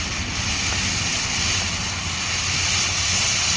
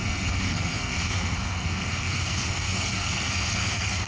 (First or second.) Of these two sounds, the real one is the first